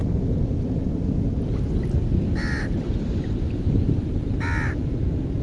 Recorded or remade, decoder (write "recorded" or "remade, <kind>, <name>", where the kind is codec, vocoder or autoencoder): remade, vocoder, BigVGAN v2